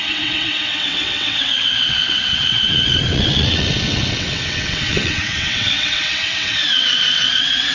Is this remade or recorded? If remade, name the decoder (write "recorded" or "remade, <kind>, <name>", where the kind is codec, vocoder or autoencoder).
remade, vocoder, WaveNeXt